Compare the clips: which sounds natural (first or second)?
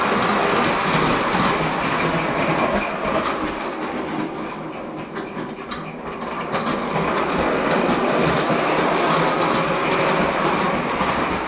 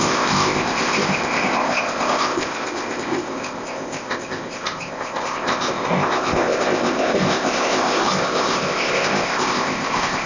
first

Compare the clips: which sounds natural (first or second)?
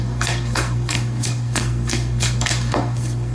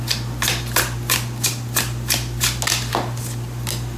second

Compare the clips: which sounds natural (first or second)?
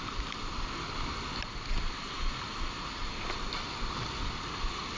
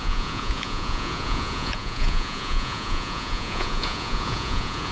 first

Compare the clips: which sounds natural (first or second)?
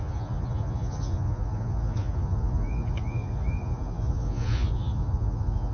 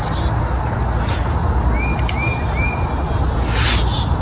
second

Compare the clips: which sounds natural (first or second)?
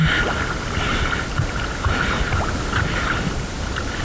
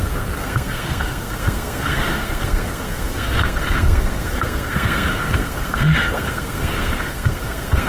first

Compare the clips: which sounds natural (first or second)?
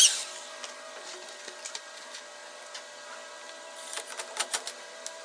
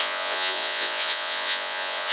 first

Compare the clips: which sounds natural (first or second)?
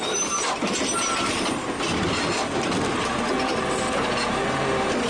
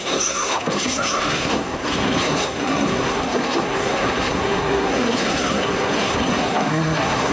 first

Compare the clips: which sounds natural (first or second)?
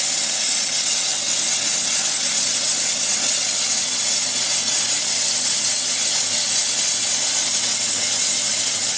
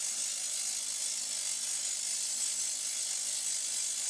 second